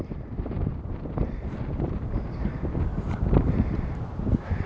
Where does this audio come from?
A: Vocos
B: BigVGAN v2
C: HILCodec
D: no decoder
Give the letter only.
B